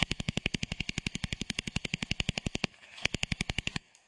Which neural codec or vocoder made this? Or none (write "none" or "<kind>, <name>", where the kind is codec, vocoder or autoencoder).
codec, SNAC